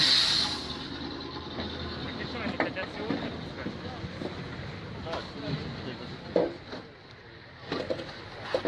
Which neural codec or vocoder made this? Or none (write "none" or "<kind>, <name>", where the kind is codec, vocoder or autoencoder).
none